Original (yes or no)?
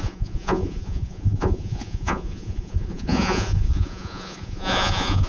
no